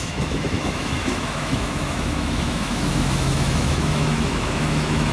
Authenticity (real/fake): fake